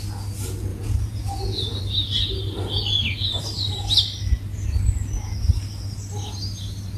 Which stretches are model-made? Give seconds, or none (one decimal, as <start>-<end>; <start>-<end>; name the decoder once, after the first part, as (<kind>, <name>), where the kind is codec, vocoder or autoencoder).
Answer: 0.7-1.8 (vocoder, Vocos)